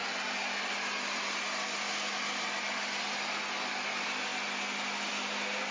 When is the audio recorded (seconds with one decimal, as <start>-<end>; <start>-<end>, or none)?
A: 0.0-5.7

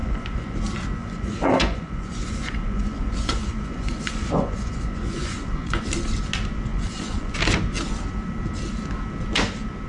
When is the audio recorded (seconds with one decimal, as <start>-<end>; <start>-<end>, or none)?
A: 0.6-1.0; 5.8-6.7; 7.3-9.9

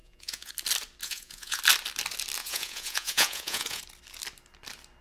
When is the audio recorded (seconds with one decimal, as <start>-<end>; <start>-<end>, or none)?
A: 0.5-1.0; 1.6-2.4; 3.8-5.0

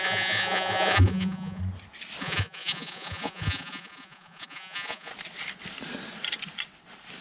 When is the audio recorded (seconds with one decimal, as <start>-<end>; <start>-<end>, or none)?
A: 1.6-2.2; 5.1-7.2